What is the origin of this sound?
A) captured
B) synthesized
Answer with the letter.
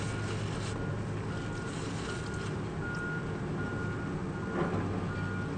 A